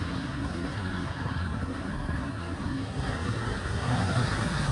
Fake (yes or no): yes